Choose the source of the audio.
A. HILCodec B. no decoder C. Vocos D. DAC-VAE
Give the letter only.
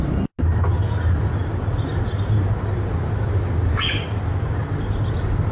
B